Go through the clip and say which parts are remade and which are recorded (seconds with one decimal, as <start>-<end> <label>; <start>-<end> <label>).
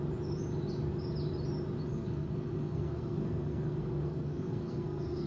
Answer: 0.0-1.9 recorded; 1.9-5.3 remade